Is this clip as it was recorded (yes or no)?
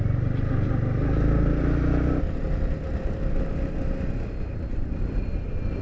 yes